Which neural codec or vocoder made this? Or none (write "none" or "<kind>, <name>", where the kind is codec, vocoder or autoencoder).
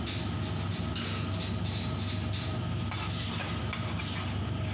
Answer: none